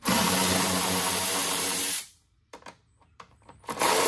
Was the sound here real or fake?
fake